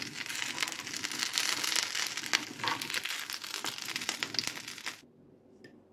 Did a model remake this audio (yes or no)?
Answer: no